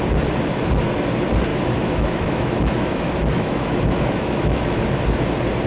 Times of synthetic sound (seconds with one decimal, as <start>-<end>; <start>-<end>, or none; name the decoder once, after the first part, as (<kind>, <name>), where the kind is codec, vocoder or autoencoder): 1.5-4.9 (autoencoder, DAC-VAE)